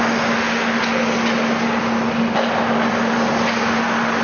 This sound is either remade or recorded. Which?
recorded